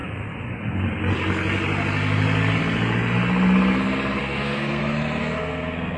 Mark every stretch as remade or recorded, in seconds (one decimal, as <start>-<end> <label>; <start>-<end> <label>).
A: 0.0-4.2 recorded; 4.2-4.8 remade; 4.8-5.2 recorded; 5.2-6.0 remade